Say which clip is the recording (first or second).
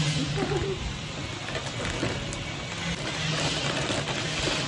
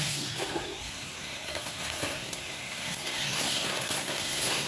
first